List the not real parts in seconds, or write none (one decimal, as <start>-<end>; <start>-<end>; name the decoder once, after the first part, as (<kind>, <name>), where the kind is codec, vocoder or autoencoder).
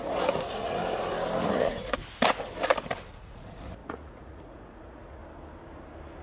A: 0.0-0.8 (vocoder, Vocos); 1.4-2.0; 3.1-5.2